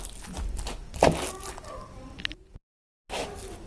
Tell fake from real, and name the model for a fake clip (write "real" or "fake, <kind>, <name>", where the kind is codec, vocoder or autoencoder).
real